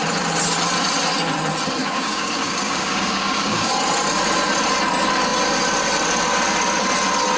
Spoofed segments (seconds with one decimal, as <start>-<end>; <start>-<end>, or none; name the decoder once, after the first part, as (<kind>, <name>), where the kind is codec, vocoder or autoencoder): 1.8-3.7 (codec, DAC)